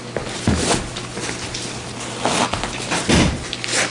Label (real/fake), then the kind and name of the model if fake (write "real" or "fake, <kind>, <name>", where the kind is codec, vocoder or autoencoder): real